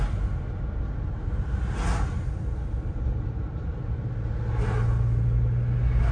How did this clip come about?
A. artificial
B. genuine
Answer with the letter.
B